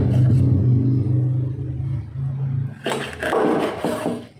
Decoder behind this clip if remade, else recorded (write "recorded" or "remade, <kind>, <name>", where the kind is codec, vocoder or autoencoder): recorded